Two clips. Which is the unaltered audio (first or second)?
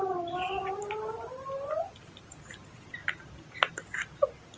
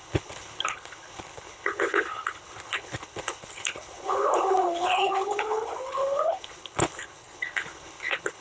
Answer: first